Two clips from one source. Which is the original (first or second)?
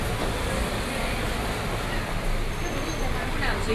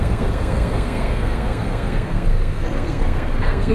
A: first